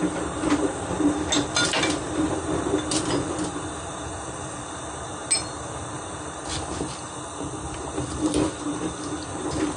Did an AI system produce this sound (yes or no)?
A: no